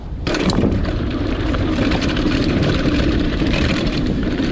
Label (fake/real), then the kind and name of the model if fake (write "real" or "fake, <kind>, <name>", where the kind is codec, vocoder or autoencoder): fake, vocoder, BigVGAN v2